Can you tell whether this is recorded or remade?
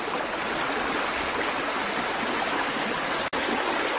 recorded